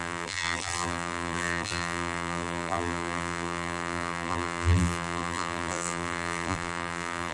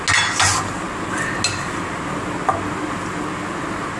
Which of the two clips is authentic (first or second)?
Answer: second